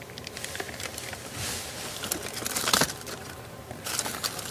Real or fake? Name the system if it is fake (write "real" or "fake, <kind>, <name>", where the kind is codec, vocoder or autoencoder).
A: real